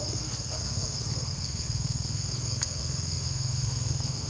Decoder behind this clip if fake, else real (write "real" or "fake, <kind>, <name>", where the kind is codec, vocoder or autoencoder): fake, codec, SNAC